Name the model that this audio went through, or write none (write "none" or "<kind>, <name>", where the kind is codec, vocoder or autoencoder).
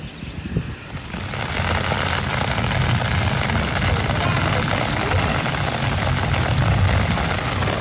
none